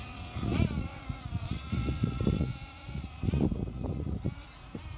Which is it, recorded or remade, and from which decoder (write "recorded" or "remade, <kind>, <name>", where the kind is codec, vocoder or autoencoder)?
remade, vocoder, Vocos